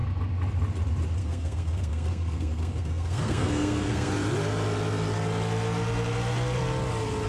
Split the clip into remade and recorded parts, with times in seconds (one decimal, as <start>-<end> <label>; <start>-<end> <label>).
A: 0.0-1.2 recorded; 1.2-4.1 remade; 4.1-7.3 recorded